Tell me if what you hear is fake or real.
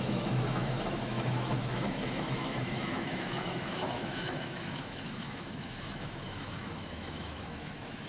fake